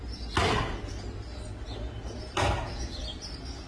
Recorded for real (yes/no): yes